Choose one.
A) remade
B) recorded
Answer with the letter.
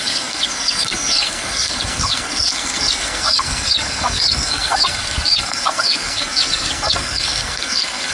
A